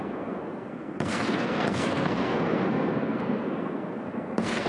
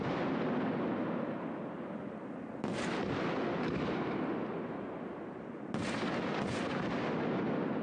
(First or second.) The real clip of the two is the second